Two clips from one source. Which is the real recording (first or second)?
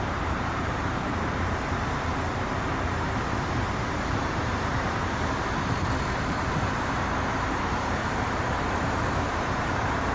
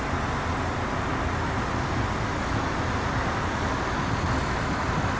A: second